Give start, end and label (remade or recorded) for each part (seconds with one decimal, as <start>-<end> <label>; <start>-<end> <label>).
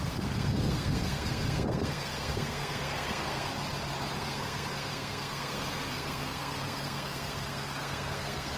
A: 0.0-3.5 remade; 3.5-4.2 recorded; 4.2-8.6 remade